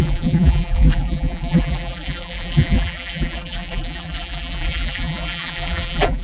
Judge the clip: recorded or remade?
remade